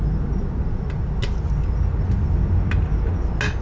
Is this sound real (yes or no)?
yes